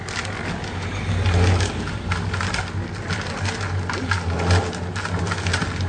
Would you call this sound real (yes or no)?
yes